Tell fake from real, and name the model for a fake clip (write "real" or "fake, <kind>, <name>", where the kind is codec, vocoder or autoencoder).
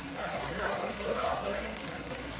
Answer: fake, codec, SNAC